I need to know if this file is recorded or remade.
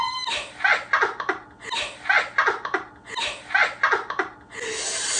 recorded